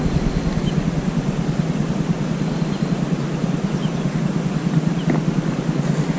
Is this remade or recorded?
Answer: recorded